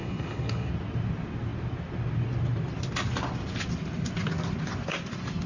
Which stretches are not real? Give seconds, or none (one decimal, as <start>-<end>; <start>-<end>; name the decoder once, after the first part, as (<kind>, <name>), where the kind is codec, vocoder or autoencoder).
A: 0.0-0.7 (codec, HILCodec)